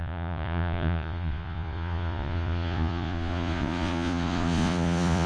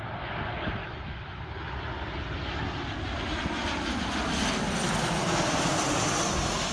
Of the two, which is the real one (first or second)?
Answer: second